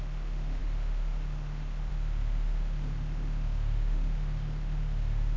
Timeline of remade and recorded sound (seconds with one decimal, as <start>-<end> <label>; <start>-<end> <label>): 0.0-5.4 remade